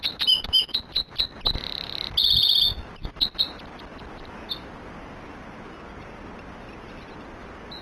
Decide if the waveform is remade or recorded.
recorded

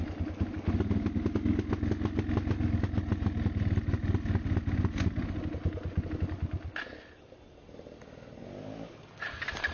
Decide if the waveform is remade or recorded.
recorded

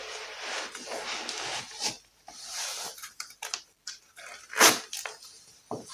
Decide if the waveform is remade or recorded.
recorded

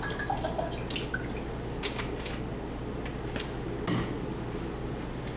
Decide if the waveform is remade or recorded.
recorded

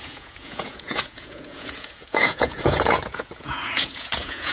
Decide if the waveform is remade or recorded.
remade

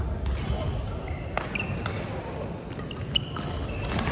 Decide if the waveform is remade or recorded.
recorded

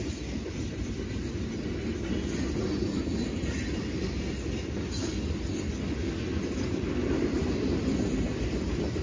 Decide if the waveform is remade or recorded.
recorded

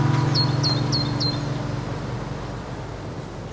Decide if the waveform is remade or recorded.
recorded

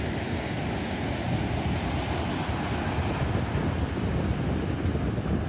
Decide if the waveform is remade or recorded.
recorded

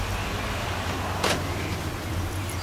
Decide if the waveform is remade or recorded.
recorded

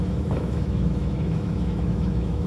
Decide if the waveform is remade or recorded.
remade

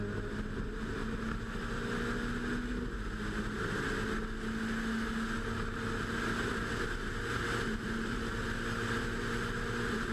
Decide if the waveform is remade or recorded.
recorded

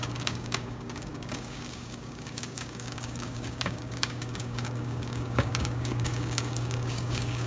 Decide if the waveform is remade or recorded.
remade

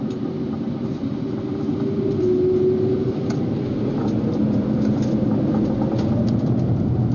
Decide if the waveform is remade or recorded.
recorded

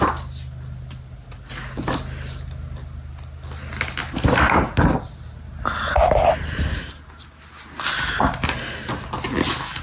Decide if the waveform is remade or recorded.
recorded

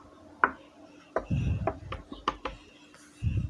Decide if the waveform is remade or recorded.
recorded